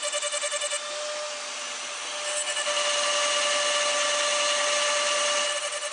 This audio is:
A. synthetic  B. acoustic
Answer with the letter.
B